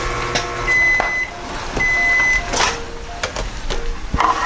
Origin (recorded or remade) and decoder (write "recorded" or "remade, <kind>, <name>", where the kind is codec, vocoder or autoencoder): recorded